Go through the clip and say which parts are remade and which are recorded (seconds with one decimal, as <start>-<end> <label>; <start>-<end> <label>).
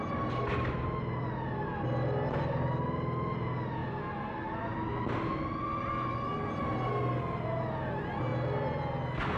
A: 0.0-9.4 recorded